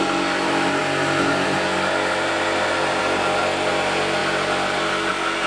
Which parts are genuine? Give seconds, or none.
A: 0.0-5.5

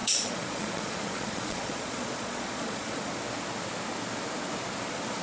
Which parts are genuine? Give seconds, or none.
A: 3.1-5.2

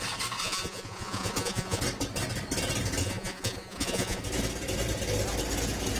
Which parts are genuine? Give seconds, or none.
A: 0.0-0.4; 1.8-3.0; 4.2-6.0

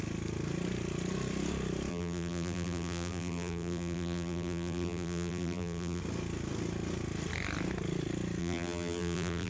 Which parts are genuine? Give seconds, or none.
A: 0.0-1.9; 6.0-8.4